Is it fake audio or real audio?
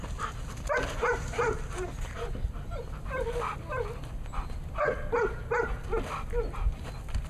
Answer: real